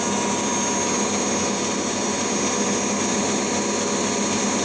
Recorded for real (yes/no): yes